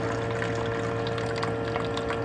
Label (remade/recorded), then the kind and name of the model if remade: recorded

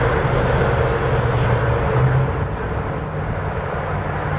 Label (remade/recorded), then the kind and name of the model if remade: recorded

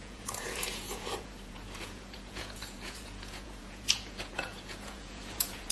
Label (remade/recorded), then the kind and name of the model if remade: remade, vocoder, Vocos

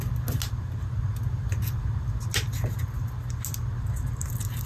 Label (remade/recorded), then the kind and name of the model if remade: recorded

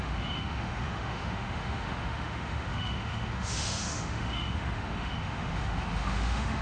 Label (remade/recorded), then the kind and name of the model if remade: remade, autoencoder, DAC-VAE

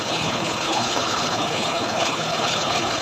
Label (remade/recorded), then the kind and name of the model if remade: remade, codec, HILCodec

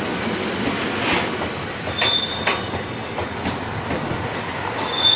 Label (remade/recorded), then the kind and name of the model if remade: recorded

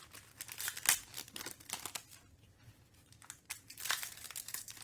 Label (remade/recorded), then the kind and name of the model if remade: recorded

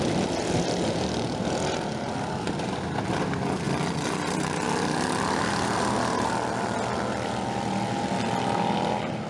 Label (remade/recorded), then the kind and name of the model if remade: recorded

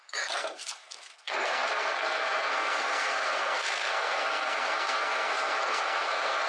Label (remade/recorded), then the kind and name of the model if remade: remade, codec, SNAC